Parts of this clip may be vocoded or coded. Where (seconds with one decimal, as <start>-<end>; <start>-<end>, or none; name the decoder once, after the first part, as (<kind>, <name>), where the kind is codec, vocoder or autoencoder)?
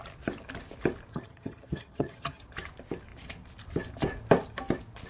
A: 1.1-2.4 (vocoder, HiFi-GAN)